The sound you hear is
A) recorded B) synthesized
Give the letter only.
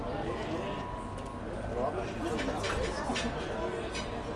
A